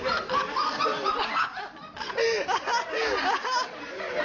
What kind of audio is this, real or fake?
real